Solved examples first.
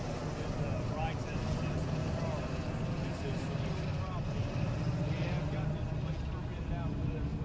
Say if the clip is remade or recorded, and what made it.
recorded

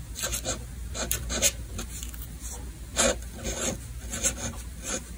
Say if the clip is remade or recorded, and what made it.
recorded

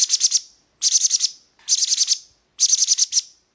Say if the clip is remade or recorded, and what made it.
recorded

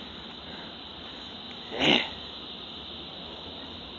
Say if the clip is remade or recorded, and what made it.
remade, vocoder, BigVGAN v2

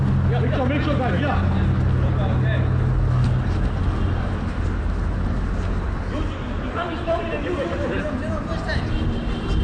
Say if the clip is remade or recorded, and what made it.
recorded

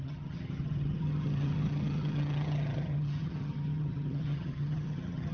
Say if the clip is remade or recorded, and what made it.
remade, vocoder, HiFi-GAN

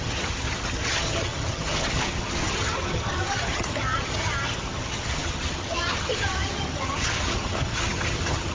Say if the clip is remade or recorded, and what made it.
remade, vocoder, HiFi-GAN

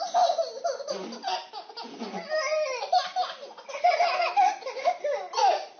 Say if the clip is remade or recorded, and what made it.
recorded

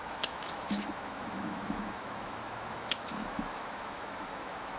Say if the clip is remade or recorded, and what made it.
remade, autoencoder, DAC-VAE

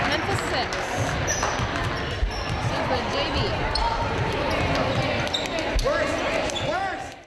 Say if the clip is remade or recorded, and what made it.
recorded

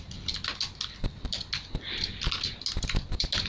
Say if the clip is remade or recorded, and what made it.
recorded